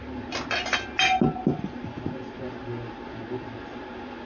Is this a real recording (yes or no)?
yes